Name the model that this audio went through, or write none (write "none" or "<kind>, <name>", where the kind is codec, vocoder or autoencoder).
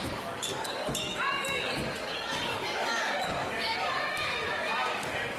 codec, DAC